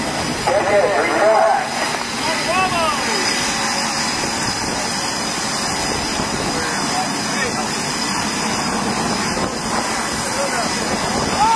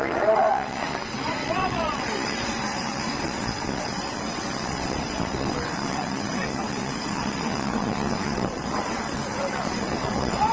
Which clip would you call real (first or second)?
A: first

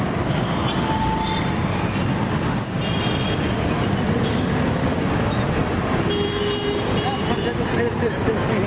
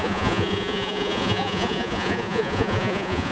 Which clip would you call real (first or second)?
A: first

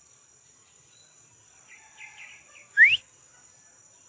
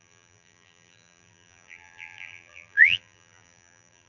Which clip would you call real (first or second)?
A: first